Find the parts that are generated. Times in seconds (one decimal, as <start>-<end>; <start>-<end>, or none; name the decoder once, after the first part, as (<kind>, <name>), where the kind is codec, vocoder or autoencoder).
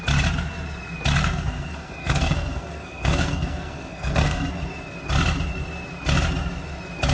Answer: 1.2-4.5 (codec, SNAC)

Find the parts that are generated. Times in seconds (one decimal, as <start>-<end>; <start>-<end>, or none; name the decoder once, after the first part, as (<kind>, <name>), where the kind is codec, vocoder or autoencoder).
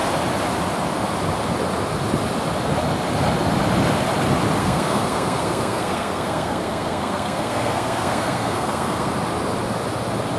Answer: 4.6-9.1 (codec, SNAC)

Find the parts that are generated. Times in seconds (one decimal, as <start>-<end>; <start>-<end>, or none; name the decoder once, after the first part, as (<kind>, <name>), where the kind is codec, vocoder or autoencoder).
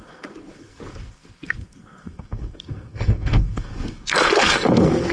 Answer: 0.0-5.1 (codec, SNAC)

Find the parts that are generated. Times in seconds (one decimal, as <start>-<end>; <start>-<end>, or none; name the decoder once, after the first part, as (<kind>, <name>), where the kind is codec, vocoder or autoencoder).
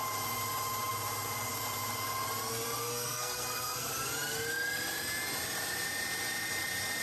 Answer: 2.8-3.9 (codec, SNAC)